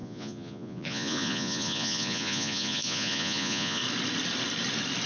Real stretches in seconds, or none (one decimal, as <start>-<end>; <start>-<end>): 3.8-5.1